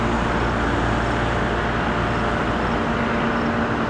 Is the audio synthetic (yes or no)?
no